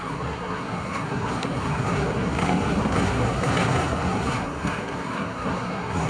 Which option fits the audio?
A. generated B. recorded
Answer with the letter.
A